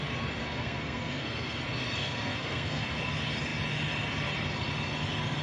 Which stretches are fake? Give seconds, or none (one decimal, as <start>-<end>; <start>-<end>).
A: 0.4-1.6; 2.0-3.0